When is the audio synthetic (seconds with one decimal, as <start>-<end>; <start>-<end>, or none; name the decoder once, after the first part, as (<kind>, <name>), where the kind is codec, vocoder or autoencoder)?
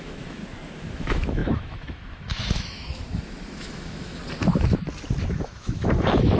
0.0-0.4 (autoencoder, DAC-VAE); 0.9-4.2; 5.3-6.4